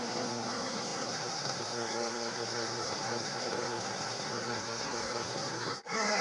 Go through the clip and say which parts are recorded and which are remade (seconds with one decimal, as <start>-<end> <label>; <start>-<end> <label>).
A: 0.0-6.2 remade